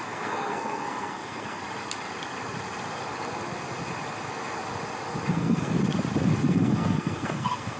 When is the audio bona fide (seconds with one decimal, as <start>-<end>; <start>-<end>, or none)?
1.6-5.3; 5.8-6.5